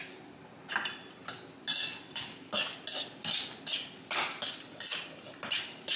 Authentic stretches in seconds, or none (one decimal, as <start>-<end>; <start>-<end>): 0.0-6.0